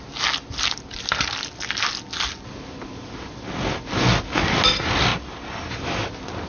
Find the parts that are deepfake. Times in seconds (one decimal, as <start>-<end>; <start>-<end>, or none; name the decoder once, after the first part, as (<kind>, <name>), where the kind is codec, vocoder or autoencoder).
5.1-5.7 (vocoder, BigVGAN v2)